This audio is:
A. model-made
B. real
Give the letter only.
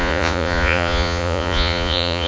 A